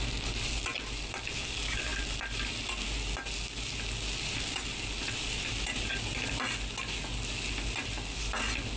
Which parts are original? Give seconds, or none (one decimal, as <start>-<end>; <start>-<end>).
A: 0.0-8.8

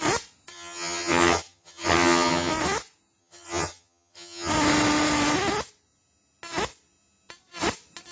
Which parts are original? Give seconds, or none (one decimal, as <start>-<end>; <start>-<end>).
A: 0.0-0.5; 2.5-3.2; 4.5-8.1

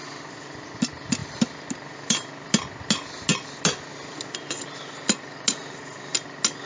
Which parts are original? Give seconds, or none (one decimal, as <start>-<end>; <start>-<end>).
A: 0.0-6.7

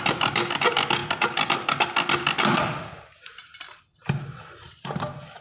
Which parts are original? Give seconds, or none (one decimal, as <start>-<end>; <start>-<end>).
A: 0.0-5.4